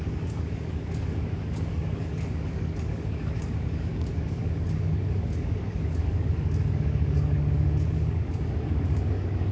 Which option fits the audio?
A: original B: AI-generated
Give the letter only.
B